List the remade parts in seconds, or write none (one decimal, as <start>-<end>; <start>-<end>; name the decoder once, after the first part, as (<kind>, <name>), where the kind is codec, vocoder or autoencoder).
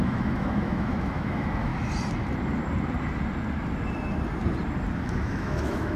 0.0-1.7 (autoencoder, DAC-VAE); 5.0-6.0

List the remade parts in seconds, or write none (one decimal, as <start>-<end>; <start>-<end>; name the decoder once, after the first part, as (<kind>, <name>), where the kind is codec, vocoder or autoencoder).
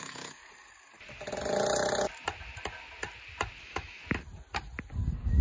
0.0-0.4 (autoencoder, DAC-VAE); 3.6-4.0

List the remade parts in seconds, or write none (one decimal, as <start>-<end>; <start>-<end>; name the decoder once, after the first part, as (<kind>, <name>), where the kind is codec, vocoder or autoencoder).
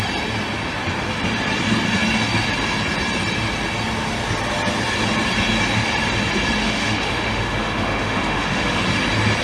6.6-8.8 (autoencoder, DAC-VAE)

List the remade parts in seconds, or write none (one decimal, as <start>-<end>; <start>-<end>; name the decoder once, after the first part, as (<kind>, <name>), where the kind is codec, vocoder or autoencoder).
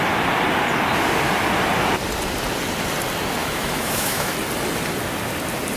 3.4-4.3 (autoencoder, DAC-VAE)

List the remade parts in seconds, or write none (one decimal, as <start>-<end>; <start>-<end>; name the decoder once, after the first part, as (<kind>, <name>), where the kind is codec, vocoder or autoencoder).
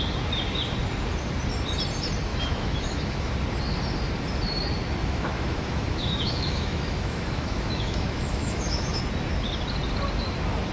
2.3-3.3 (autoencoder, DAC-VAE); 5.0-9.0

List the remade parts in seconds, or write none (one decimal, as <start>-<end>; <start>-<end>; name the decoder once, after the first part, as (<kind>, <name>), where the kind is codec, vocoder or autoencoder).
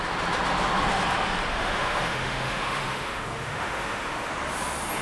1.5-4.3 (autoencoder, DAC-VAE)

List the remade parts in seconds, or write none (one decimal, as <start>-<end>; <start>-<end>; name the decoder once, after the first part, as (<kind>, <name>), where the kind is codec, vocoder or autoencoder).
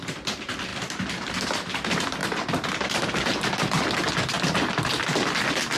none